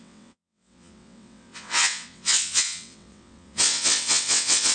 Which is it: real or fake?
fake